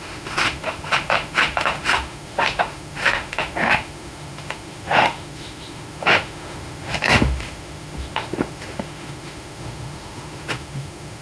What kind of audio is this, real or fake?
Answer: fake